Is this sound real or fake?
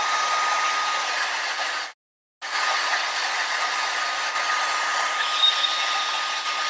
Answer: real